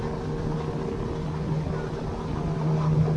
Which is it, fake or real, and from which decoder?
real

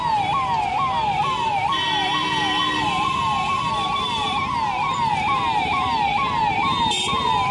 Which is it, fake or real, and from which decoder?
real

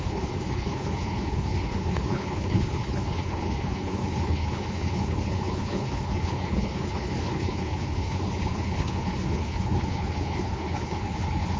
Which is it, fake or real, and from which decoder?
fake, codec, HILCodec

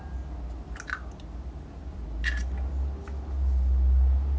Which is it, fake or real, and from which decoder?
real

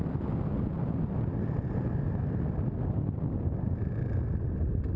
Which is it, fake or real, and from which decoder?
real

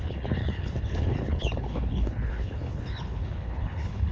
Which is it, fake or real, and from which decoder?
fake, codec, HILCodec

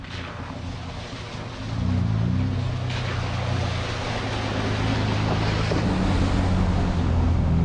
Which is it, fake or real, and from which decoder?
real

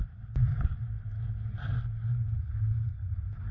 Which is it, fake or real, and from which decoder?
real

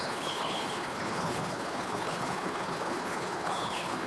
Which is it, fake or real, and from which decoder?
fake, codec, HILCodec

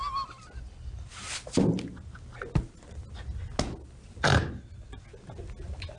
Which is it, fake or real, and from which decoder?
real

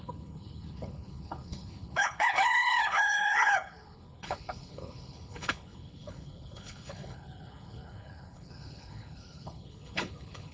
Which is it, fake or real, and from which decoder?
fake, codec, HILCodec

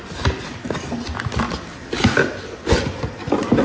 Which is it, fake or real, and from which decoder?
real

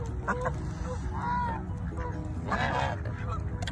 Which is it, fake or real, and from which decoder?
real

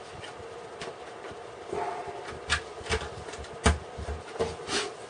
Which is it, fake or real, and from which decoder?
real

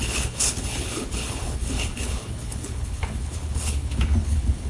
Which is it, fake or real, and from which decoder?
fake, codec, HILCodec